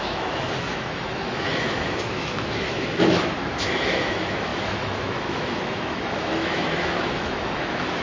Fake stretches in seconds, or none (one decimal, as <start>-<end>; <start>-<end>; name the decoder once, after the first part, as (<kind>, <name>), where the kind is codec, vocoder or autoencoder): 0.0-8.0 (autoencoder, DAC-VAE)